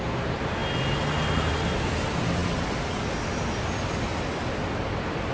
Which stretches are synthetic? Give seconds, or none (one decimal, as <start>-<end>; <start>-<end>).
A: none